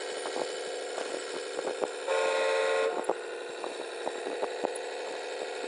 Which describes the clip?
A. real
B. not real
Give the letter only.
A